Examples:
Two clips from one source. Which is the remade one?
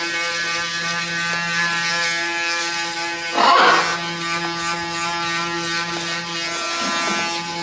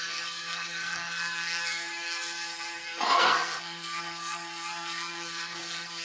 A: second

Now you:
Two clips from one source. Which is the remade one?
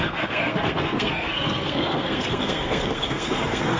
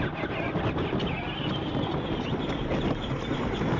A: first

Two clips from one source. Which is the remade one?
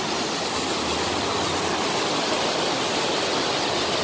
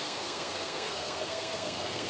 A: second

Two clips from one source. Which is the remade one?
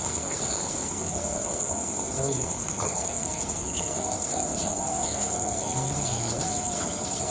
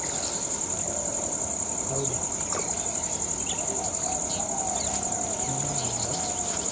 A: first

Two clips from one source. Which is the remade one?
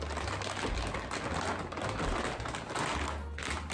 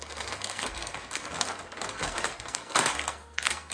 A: second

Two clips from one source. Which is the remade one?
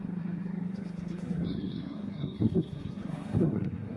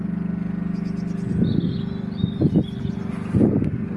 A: first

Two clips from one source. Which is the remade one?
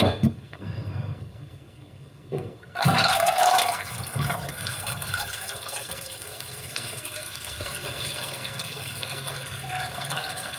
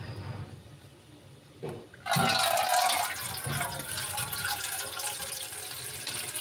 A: first